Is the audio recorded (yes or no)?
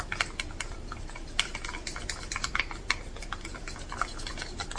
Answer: no